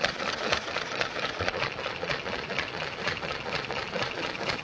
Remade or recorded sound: remade